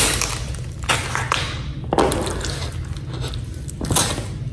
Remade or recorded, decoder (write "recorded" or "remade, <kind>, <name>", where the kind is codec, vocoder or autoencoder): recorded